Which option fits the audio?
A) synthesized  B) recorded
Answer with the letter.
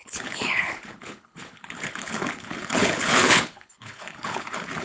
A